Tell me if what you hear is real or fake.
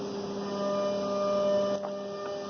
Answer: real